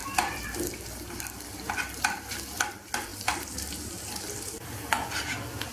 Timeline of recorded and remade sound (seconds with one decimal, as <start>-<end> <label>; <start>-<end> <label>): 0.0-1.7 remade; 1.7-5.7 recorded